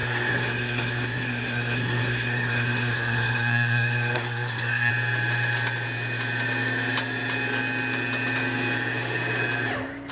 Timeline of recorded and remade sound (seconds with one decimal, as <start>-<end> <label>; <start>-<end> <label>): 0.0-4.9 remade; 4.9-10.1 recorded